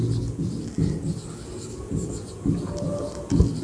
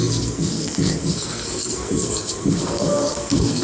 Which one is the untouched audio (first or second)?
first